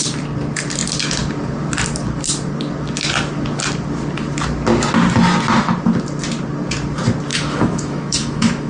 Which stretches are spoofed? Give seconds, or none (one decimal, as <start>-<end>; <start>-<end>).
7.3-8.7

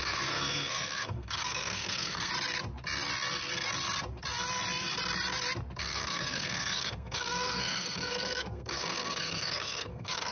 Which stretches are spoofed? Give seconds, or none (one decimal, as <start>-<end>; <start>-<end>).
0.0-2.3; 5.8-10.3

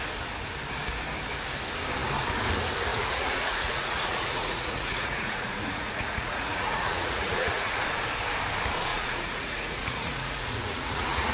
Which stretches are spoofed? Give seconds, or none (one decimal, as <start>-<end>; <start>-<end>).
2.9-7.8; 8.9-11.3

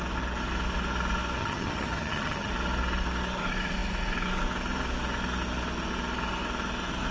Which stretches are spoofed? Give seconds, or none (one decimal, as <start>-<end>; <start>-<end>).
1.4-2.5

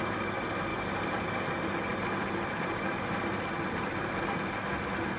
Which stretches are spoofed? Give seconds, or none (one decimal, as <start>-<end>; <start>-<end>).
0.7-1.3; 1.9-5.2

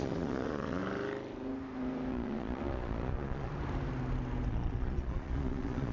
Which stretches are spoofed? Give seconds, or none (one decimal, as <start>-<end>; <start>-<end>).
0.0-0.8; 2.1-3.5; 4.5-5.9

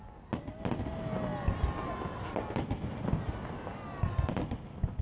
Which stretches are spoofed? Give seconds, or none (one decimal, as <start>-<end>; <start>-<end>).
none